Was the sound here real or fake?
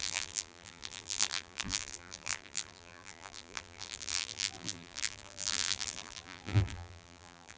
fake